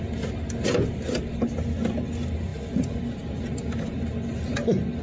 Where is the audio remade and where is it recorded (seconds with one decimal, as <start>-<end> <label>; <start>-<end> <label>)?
0.0-5.0 recorded